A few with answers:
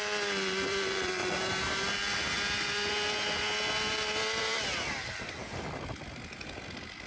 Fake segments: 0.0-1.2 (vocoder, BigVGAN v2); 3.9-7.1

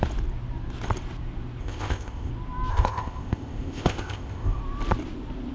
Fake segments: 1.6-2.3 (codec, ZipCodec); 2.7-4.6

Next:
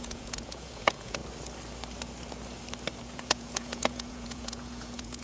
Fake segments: 0.0-1.2 (vocoder, Vocos); 3.0-5.2

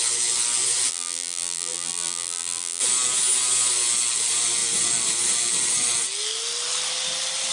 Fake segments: 0.9-2.8 (vocoder, BigVGAN v2)